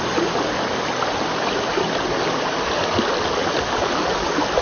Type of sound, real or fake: real